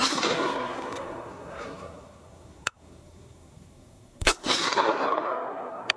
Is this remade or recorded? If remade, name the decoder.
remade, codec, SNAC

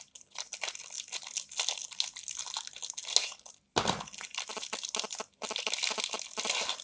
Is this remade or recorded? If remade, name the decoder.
recorded